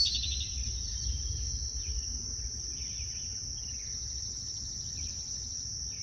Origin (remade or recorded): recorded